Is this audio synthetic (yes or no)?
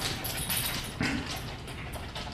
no